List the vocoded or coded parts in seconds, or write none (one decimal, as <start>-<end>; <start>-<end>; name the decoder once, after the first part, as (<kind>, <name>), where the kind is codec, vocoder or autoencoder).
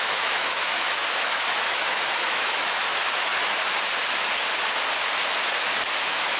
0.0-3.3 (autoencoder, DAC-VAE); 5.9-6.4